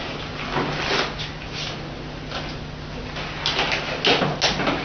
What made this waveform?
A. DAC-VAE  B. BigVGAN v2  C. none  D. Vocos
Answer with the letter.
C